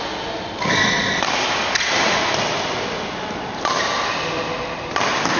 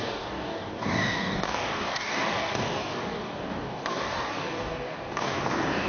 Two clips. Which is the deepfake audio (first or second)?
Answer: second